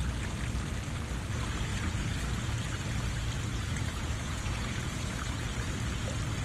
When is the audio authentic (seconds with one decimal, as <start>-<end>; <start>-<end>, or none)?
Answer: 0.0-1.7; 2.2-3.5; 5.4-6.4